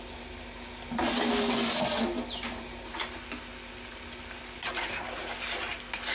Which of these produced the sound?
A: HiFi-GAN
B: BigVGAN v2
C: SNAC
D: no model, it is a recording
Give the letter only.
D